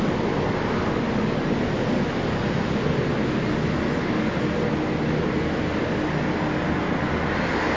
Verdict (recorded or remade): recorded